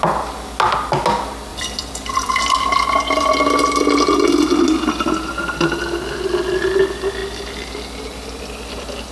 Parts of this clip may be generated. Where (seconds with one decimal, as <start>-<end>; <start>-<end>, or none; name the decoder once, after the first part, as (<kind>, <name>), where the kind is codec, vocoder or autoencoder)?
1.5-3.3 (vocoder, BigVGAN v2)